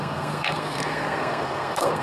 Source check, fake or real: fake